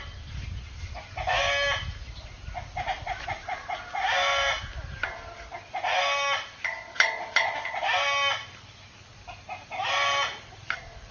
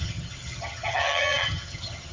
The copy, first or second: second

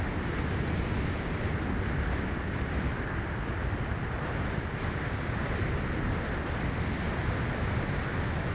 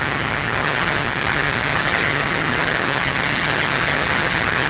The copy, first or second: second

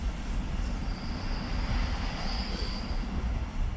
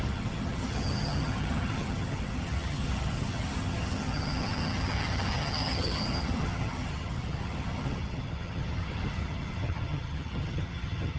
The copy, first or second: second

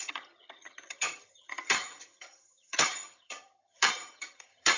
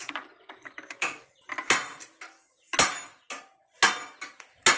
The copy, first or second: first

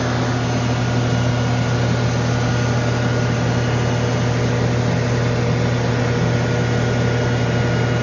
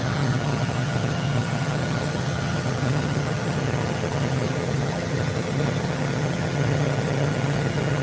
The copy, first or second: second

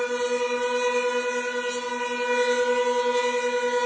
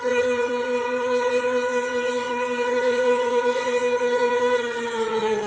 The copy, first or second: second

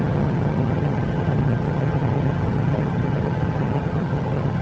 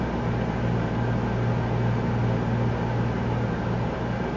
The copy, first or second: first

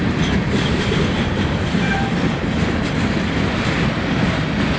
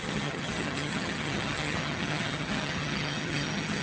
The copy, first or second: second